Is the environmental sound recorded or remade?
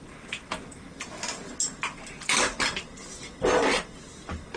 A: recorded